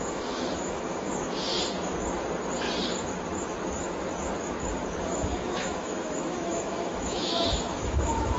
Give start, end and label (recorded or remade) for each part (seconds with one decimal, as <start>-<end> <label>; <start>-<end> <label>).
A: 0.0-1.1 remade; 1.1-5.0 recorded; 5.0-8.4 remade